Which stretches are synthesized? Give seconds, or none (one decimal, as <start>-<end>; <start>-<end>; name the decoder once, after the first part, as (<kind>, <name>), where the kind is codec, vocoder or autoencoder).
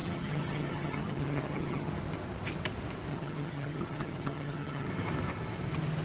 0.0-1.9 (vocoder, HiFi-GAN); 3.1-4.9